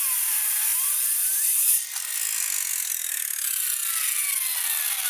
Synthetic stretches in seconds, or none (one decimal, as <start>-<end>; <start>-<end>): none